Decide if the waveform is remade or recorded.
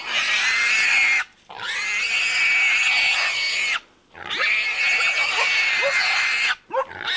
recorded